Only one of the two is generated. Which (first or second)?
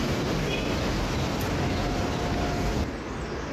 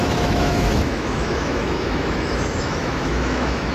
second